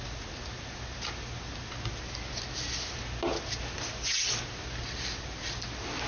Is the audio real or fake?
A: real